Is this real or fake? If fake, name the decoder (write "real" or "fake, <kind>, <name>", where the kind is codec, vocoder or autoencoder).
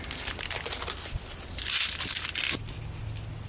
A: real